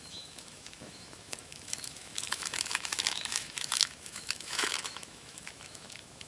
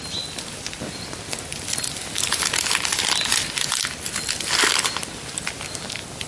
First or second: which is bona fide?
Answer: second